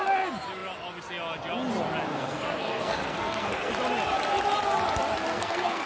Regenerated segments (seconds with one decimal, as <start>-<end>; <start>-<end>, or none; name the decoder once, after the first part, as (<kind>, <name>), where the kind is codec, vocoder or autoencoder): 2.1-3.7 (codec, SNAC); 5.3-5.9